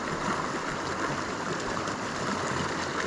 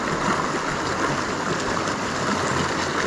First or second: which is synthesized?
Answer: first